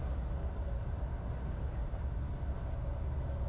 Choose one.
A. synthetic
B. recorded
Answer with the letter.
B